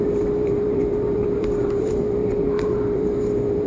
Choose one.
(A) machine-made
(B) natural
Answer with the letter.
A